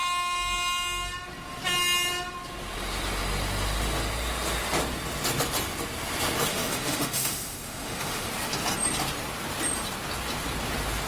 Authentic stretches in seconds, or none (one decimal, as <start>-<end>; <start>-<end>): 0.0-6.5; 8.3-11.1